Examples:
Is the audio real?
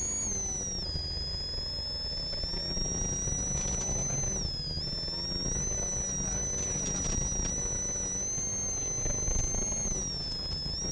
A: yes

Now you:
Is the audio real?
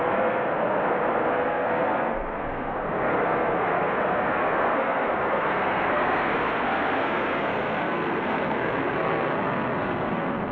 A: no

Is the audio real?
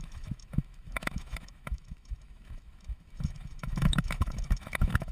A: no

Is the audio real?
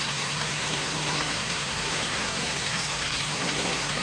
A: no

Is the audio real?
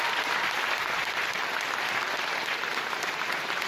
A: yes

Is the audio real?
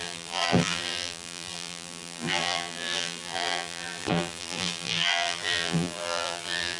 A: no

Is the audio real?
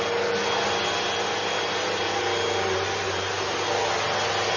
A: yes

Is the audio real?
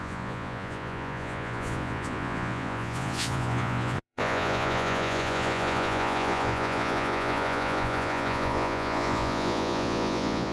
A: no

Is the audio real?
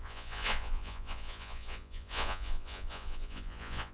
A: no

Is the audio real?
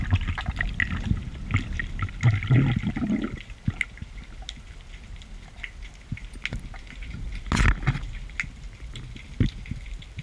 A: yes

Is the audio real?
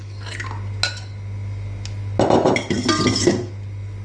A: yes